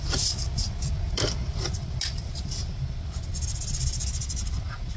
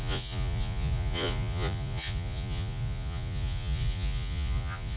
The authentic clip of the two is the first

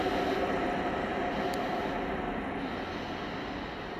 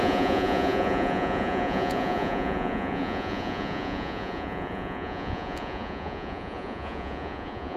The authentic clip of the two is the first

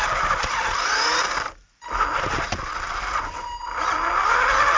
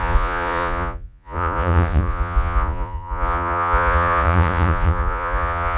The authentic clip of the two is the first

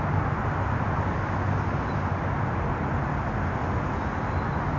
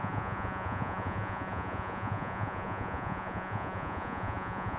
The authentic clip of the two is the first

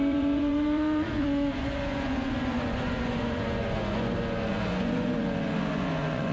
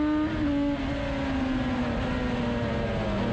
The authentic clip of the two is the second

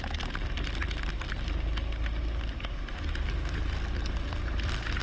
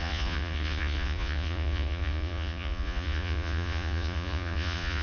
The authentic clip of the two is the first